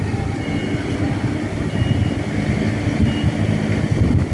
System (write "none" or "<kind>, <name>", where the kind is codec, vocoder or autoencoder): none